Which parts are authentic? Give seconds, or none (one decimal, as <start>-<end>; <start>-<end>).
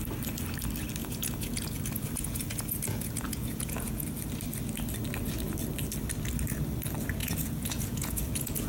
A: 0.0-1.0; 4.1-7.2